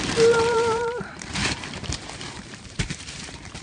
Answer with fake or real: fake